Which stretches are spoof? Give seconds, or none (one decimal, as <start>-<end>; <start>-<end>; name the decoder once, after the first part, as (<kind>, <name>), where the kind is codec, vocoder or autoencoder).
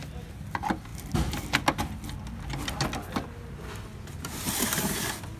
none